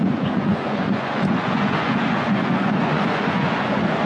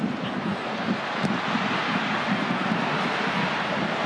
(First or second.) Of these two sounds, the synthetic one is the first